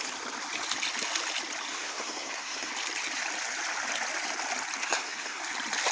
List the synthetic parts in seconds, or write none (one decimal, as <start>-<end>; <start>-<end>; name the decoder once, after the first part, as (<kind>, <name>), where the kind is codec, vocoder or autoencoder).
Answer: 1.7-2.7 (codec, SNAC); 4.8-5.4